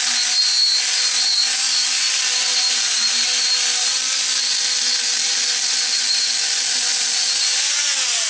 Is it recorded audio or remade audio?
recorded